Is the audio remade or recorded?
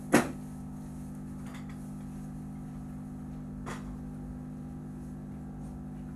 recorded